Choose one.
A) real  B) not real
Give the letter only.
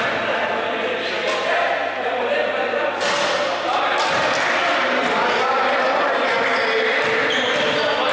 A